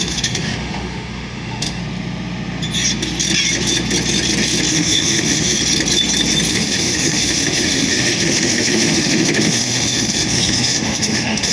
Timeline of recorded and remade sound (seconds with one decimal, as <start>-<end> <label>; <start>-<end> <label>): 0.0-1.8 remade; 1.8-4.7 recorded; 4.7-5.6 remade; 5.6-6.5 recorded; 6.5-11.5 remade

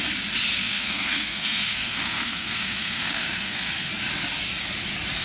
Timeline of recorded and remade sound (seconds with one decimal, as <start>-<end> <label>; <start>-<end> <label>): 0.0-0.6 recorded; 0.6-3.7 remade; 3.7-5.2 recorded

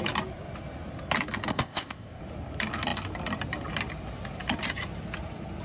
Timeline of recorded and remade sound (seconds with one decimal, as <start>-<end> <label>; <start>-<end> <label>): 0.0-1.5 recorded; 1.5-2.2 remade; 2.2-5.6 recorded

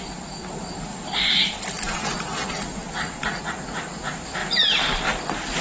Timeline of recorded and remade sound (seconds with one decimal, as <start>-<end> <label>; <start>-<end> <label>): 0.0-0.9 recorded; 0.9-3.4 remade; 3.4-4.4 recorded; 4.4-5.6 remade

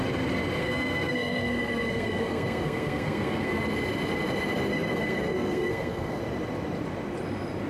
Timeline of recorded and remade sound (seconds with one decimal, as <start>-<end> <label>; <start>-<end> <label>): 0.0-0.6 recorded; 0.6-3.6 remade; 3.6-4.7 recorded; 4.7-6.2 remade; 6.2-7.7 recorded